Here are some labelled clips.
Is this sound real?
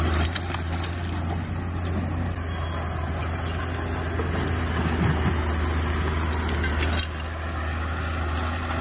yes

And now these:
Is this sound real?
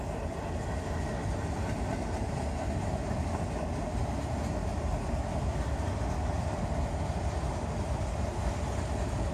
yes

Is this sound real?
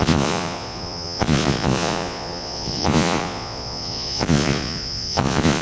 no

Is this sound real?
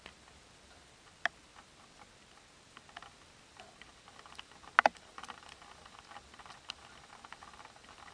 yes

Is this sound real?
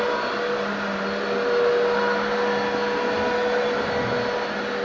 yes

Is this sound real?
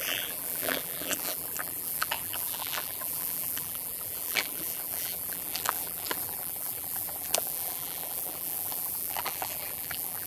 no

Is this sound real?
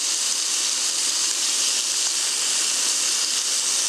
yes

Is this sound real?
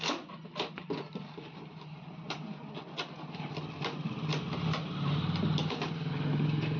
yes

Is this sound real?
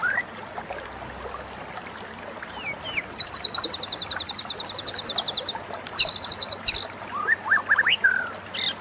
yes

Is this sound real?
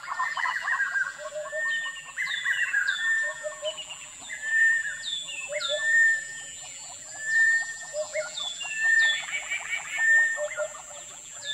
no